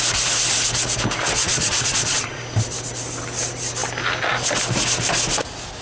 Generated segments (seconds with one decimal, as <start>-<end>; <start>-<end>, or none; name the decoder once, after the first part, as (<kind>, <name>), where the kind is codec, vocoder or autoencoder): 1.4-2.4 (vocoder, Vocos)